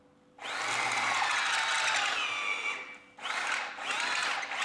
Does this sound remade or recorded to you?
recorded